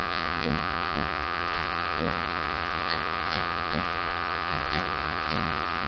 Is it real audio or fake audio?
fake